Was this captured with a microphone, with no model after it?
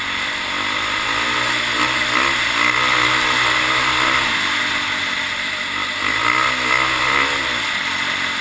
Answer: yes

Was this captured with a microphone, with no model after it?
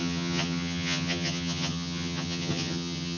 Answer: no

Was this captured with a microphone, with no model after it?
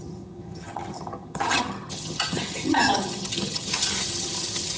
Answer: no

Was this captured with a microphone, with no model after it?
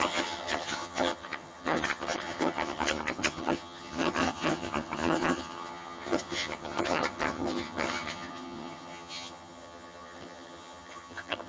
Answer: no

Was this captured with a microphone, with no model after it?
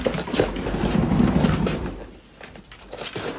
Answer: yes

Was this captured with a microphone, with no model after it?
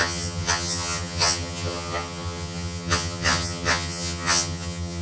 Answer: no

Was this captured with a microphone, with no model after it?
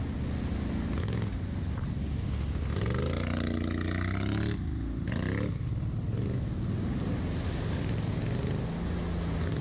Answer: yes